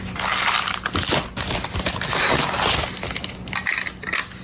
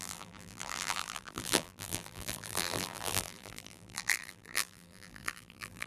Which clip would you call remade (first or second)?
second